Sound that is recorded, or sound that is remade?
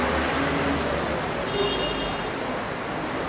recorded